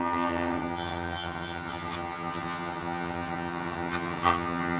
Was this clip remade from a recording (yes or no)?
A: yes